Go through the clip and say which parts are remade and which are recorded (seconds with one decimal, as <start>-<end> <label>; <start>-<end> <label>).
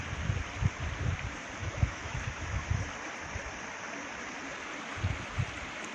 0.0-1.6 recorded; 1.6-2.8 remade; 2.8-5.9 recorded